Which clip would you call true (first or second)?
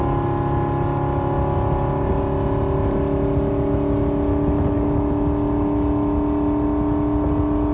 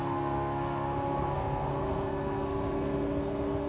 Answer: first